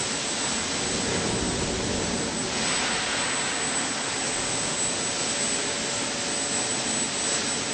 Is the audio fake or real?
real